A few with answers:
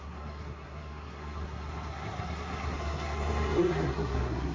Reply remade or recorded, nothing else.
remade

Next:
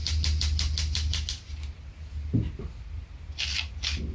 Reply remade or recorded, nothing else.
recorded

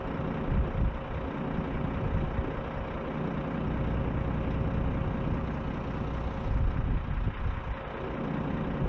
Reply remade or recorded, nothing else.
recorded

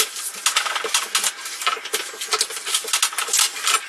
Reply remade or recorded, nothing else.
recorded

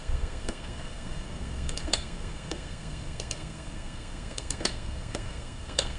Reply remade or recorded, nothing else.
remade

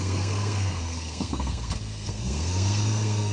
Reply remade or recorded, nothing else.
remade